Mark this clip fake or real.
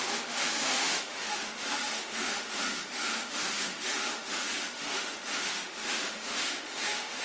fake